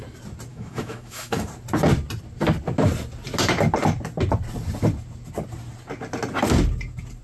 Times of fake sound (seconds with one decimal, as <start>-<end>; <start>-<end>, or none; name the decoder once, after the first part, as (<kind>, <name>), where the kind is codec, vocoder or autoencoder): 0.5-1.5 (autoencoder, DAC-VAE)